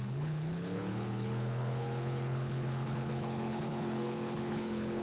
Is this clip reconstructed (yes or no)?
yes